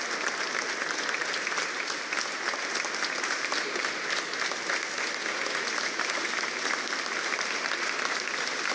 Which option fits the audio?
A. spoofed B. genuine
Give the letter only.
B